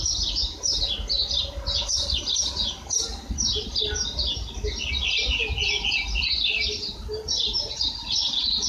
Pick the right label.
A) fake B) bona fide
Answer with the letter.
B